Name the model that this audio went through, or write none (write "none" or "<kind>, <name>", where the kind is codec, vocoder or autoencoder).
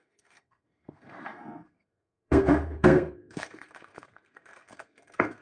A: codec, SNAC